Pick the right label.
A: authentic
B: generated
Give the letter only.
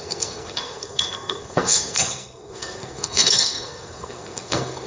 B